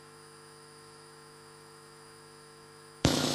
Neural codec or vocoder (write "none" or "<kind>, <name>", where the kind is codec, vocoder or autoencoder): autoencoder, DAC-VAE